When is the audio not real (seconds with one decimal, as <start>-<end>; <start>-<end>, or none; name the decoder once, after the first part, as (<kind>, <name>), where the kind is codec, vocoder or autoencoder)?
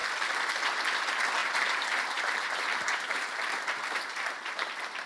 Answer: 1.4-4.5 (vocoder, BigVGAN v2)